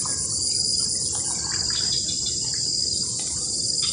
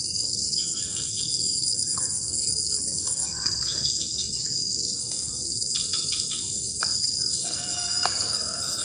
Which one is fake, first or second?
second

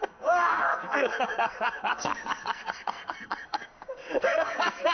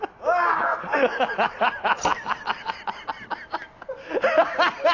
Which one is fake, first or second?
first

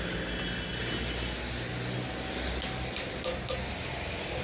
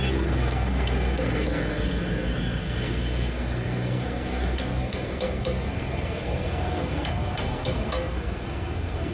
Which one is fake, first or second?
second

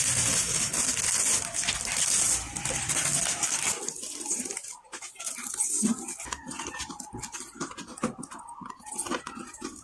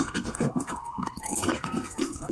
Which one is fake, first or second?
second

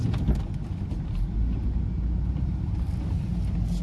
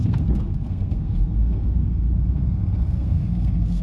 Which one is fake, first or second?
second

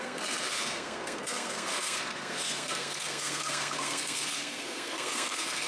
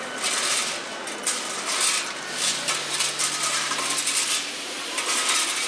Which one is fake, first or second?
first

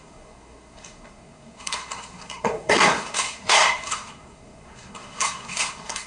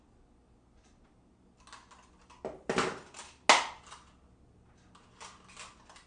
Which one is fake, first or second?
first